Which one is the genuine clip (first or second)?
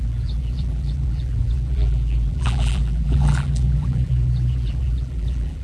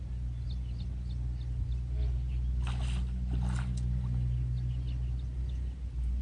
second